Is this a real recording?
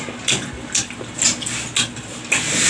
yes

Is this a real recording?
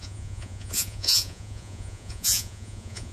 no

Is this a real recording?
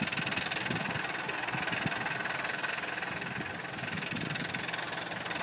yes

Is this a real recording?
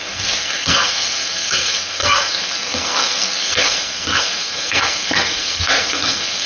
no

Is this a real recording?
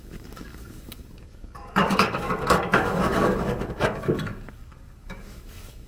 no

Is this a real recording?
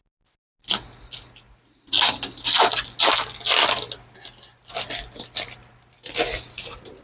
yes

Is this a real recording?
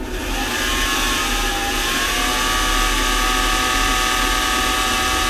yes